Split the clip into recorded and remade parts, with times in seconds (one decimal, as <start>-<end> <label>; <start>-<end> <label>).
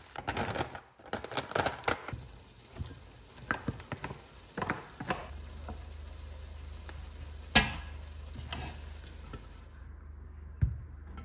0.0-11.2 recorded